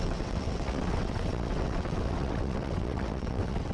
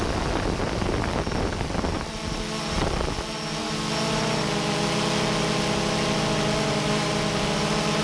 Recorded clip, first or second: second